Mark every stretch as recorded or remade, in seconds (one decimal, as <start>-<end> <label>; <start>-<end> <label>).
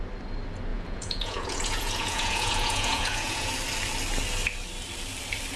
0.0-0.7 recorded; 0.7-3.5 remade; 3.5-5.6 recorded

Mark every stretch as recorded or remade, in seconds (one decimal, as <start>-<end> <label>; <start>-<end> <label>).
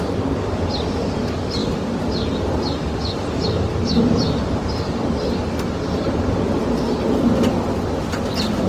0.0-8.7 recorded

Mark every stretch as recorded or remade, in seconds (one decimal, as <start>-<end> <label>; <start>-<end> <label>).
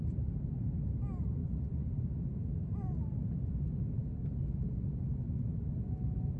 0.0-1.4 recorded; 1.4-2.0 remade; 2.0-2.6 recorded; 2.6-3.4 remade; 3.4-6.4 recorded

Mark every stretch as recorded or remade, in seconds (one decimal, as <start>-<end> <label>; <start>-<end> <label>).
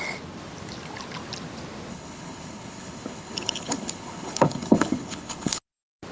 0.0-1.9 recorded; 1.9-5.6 remade; 5.6-6.1 recorded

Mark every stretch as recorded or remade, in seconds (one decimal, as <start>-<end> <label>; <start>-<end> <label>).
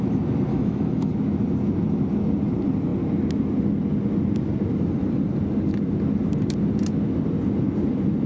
0.0-0.5 recorded; 0.5-1.1 remade; 1.1-8.3 recorded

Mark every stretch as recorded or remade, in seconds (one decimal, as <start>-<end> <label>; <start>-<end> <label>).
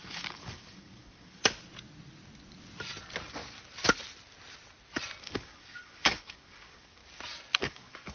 0.0-1.4 remade; 1.4-5.2 recorded; 5.2-7.0 remade; 7.0-7.6 recorded; 7.6-8.1 remade